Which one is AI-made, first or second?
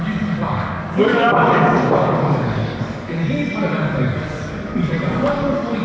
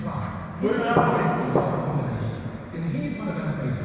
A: first